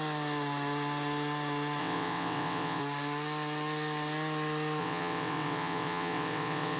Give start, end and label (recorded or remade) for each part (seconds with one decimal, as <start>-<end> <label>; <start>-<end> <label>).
0.0-1.8 recorded; 1.8-2.8 remade; 2.8-4.8 recorded; 4.8-6.8 remade